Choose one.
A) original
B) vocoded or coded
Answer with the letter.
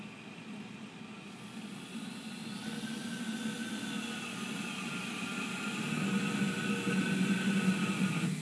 A